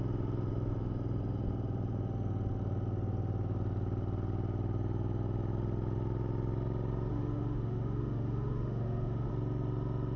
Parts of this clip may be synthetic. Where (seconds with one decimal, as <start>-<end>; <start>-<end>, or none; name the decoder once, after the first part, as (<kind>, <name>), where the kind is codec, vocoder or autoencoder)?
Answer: 7.1-9.3 (autoencoder, DAC-VAE)